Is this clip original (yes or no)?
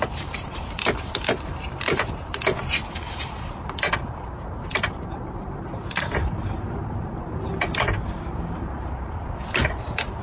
no